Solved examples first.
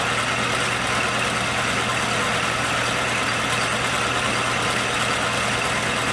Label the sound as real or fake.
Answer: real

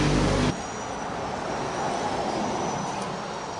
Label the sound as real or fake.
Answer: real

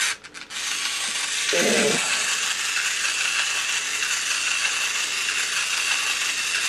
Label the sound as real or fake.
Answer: real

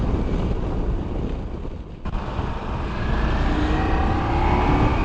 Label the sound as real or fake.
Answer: fake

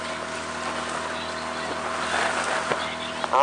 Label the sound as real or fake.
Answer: real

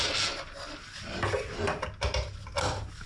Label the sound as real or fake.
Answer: real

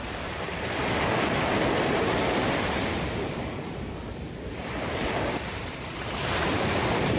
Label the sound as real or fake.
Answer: fake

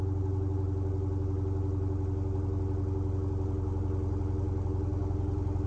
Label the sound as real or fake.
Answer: real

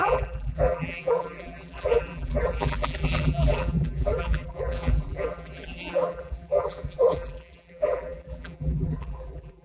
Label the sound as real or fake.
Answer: fake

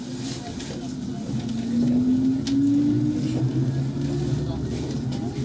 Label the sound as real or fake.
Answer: real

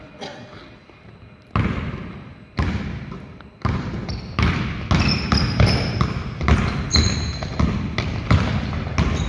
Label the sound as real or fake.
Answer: real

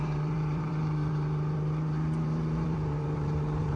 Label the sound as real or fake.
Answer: fake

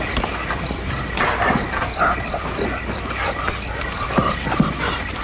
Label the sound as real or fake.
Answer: fake